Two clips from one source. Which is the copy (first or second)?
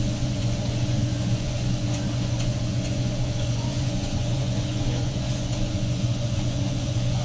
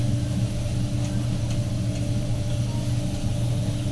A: first